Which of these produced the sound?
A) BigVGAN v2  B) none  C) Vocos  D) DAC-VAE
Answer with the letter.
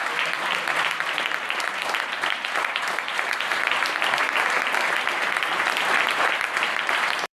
A